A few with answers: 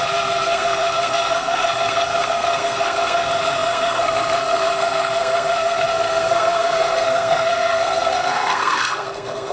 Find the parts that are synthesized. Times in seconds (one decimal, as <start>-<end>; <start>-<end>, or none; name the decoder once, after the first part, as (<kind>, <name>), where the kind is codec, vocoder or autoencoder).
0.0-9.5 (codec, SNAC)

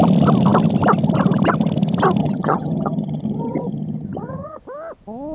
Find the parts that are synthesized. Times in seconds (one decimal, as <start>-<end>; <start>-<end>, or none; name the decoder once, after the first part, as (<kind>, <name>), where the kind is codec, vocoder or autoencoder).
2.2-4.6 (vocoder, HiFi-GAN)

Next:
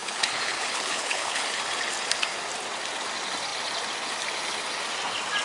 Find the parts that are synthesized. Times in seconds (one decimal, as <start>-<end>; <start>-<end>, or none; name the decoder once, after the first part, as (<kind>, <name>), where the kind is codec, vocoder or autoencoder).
0.0-1.6 (codec, HILCodec)

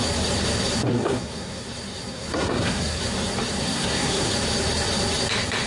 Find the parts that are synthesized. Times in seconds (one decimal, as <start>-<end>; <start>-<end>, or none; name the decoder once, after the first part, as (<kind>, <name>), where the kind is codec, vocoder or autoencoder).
0.9-1.6 (codec, SNAC); 2.1-3.0; 3.6-4.3

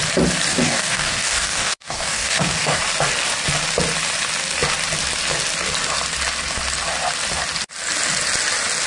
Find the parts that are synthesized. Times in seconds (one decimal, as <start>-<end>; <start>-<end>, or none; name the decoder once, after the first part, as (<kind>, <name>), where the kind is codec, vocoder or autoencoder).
0.5-2.8 (codec, DAC)